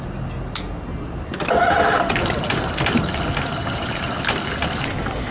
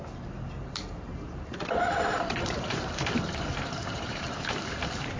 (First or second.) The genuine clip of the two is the first